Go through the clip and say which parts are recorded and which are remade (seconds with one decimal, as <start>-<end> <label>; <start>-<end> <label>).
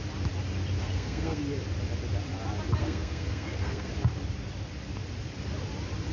0.0-0.8 recorded; 0.8-1.4 remade; 1.4-2.8 recorded; 2.8-3.9 remade; 3.9-6.1 recorded